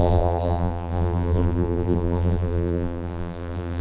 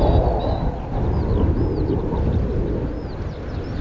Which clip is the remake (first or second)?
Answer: first